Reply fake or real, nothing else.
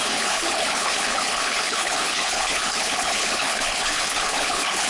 fake